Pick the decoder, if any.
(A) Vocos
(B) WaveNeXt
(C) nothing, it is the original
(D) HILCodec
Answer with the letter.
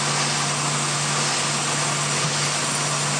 C